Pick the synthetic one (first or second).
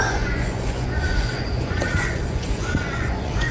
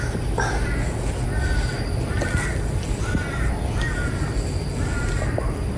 first